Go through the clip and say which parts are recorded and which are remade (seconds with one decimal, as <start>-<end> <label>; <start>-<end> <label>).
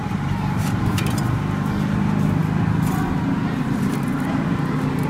0.0-1.1 remade; 1.1-5.1 recorded